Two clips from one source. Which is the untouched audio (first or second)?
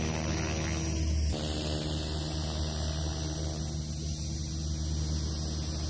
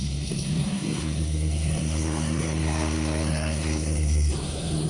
first